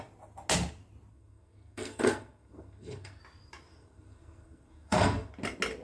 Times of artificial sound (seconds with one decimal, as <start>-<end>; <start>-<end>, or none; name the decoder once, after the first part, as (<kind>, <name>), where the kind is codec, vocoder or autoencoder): 1.1-3.2 (codec, SNAC); 3.7-5.3